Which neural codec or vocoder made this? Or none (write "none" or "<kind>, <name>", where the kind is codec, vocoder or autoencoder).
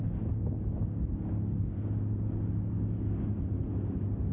none